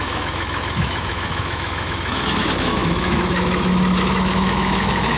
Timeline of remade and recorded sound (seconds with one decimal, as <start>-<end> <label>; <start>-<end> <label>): 0.0-5.2 remade